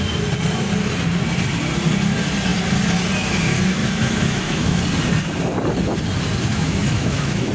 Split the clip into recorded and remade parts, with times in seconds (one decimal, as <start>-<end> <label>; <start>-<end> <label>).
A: 0.0-3.8 recorded; 3.8-4.8 remade; 4.8-6.5 recorded; 6.5-7.5 remade